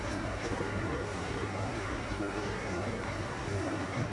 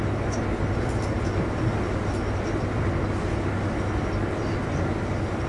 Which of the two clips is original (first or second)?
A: second